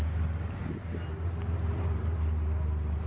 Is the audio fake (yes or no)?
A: no